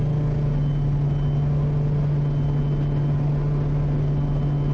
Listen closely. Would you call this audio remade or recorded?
recorded